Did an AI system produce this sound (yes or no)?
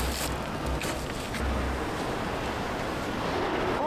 no